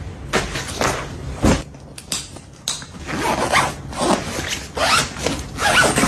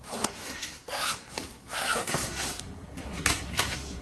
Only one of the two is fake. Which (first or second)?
second